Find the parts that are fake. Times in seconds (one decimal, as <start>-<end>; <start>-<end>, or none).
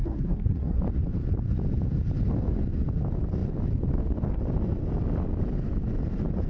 0.0-0.8